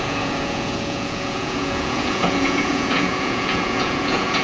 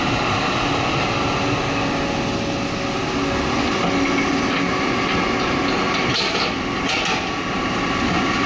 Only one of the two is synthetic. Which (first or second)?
first